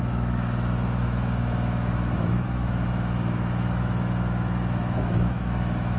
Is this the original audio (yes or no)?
no